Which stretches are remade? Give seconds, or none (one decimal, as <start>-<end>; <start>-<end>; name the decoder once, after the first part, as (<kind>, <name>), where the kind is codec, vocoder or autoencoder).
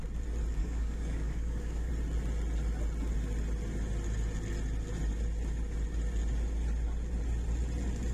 0.6-1.9 (codec, DAC)